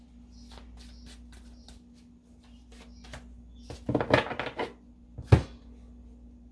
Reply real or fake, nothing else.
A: real